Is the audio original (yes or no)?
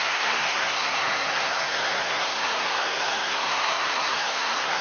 no